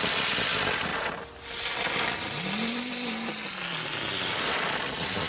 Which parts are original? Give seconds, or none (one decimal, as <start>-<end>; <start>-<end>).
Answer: 0.0-5.3